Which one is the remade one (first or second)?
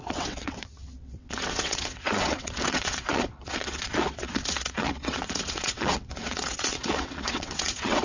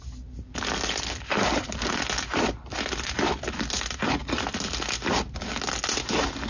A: first